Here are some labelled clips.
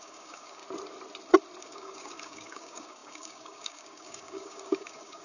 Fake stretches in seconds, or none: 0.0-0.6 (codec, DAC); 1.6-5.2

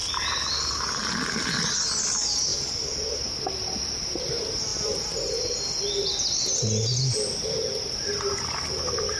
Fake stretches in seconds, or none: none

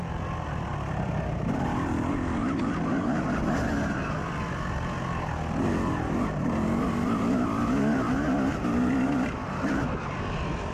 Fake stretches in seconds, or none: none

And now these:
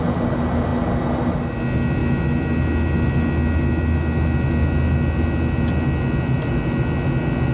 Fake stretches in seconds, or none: none

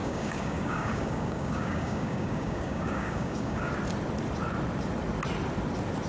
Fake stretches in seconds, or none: 0.0-3.7 (codec, DAC)